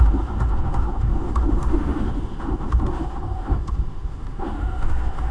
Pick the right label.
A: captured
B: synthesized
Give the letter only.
B